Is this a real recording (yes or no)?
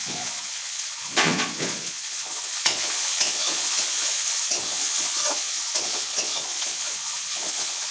no